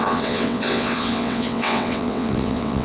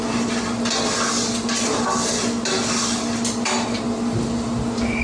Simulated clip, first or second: first